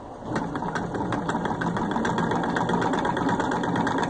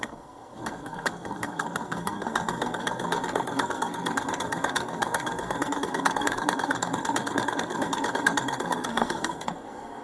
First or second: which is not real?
second